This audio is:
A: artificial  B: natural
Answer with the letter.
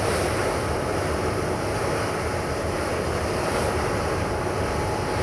B